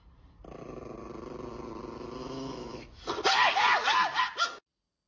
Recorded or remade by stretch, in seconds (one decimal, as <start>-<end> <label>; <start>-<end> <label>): 0.0-2.2 recorded; 2.2-3.0 remade; 3.0-5.1 recorded